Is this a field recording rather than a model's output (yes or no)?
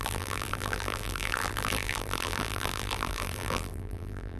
no